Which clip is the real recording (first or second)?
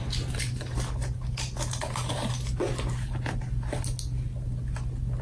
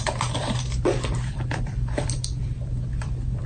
first